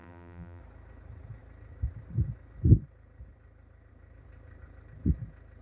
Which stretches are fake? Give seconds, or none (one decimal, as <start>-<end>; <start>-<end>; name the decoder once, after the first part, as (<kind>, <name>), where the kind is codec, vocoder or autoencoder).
0.0-0.6 (vocoder, BigVGAN v2)